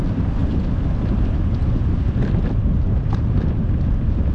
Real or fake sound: real